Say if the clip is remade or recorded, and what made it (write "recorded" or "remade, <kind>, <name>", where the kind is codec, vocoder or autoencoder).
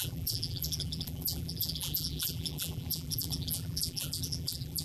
remade, vocoder, BigVGAN v2